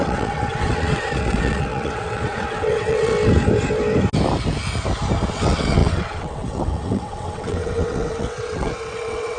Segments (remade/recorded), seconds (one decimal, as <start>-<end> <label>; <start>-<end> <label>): 0.0-3.1 remade; 3.1-5.3 recorded; 5.3-9.4 remade